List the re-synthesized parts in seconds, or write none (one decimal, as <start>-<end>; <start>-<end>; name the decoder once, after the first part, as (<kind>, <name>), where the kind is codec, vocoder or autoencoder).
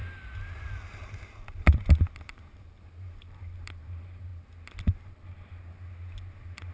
2.2-4.3 (vocoder, BigVGAN v2)